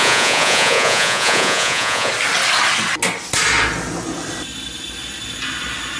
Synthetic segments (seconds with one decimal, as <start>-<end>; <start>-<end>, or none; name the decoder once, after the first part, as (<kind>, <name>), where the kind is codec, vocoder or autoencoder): 0.0-2.1 (vocoder, Vocos)